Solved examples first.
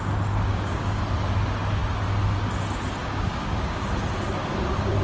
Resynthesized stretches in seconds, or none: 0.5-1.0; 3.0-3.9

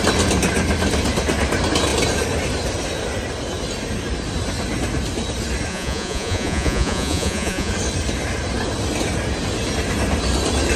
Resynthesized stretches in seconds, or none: 5.7-7.7

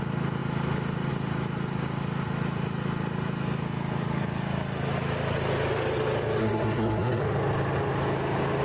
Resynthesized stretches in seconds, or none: 6.4-7.2

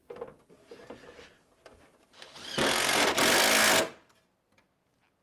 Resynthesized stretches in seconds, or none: none